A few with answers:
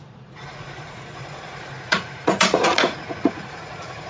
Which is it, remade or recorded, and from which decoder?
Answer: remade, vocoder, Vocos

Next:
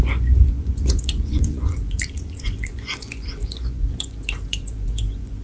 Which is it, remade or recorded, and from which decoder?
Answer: remade, vocoder, Vocos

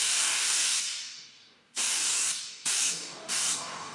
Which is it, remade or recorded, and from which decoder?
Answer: remade, codec, DAC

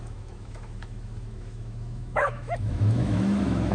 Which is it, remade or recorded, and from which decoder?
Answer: remade, autoencoder, DAC-VAE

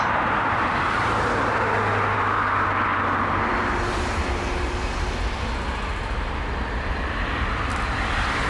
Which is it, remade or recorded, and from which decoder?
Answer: recorded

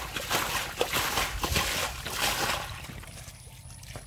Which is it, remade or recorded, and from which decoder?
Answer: recorded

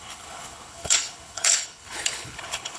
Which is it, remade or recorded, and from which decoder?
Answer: remade, codec, HILCodec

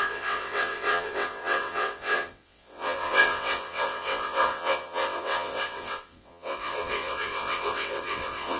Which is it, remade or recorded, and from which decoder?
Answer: remade, vocoder, WaveNeXt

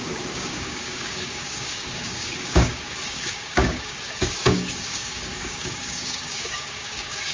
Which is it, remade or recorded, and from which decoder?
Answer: remade, codec, DAC